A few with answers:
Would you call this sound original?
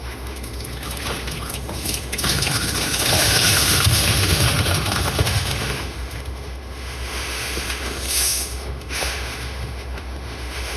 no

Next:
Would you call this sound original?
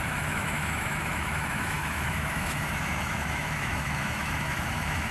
no